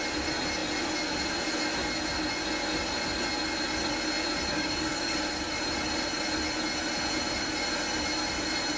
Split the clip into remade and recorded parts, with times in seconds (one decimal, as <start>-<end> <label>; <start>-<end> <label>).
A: 0.0-4.5 recorded; 4.5-5.6 remade; 5.6-8.8 recorded